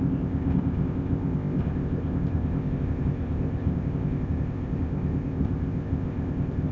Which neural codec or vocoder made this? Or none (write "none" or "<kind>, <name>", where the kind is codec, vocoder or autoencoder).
codec, ZipCodec